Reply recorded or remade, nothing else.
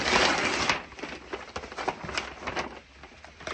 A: recorded